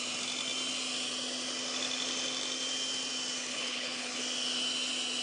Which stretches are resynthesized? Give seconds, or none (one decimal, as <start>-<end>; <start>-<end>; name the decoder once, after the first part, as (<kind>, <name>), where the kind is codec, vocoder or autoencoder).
3.5-4.2 (codec, HILCodec)